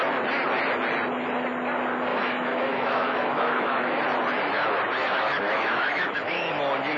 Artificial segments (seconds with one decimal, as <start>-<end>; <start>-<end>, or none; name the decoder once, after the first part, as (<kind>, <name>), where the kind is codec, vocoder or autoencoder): 2.1-4.0 (autoencoder, DAC-VAE); 5.0-6.5